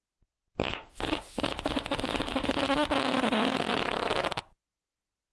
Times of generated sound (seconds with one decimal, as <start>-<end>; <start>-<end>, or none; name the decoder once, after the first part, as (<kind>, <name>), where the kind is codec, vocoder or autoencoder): 0.6-3.8 (autoencoder, DAC-VAE)